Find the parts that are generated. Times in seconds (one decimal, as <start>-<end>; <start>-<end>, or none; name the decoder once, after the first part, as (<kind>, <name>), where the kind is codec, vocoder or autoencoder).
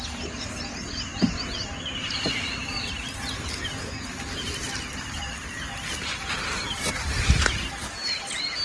none